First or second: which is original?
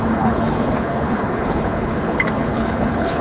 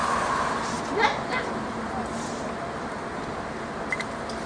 second